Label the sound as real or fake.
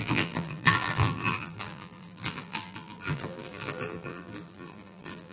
fake